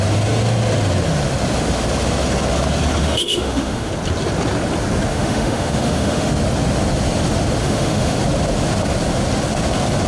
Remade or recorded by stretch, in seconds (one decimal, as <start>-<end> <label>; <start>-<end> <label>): 0.0-3.0 recorded; 3.0-3.9 remade; 3.9-5.1 recorded; 5.1-6.3 remade; 6.3-7.6 recorded; 7.6-8.2 remade; 8.2-10.1 recorded